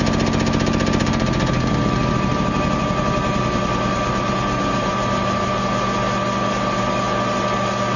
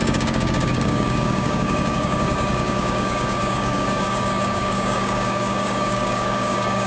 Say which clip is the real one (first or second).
first